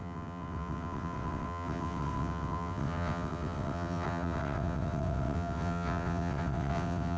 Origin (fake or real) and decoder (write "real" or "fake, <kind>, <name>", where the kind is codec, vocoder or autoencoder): fake, vocoder, WaveNeXt